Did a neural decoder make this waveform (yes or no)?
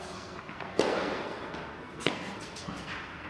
yes